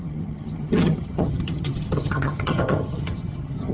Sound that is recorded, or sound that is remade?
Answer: remade